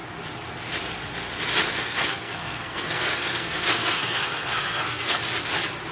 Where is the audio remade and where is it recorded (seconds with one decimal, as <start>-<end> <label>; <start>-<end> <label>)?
0.0-1.7 recorded; 1.7-5.2 remade; 5.2-5.9 recorded